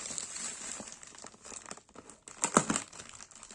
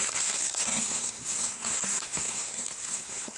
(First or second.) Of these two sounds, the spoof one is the second